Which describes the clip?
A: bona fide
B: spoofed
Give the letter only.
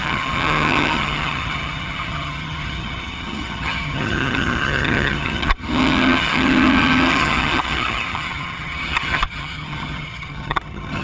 B